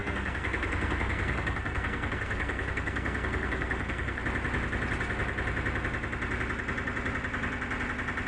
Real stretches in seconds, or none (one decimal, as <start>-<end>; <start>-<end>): 4.2-8.3